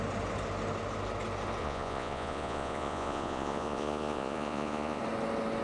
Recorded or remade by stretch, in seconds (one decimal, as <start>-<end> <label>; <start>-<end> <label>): 0.0-1.6 recorded; 1.6-5.0 remade; 5.0-5.6 recorded